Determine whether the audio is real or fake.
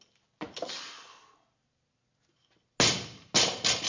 real